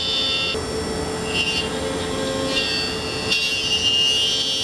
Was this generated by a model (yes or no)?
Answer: no